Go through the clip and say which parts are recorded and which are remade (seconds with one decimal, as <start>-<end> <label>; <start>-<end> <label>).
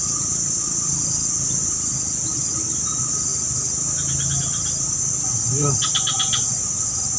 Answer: 0.0-7.2 recorded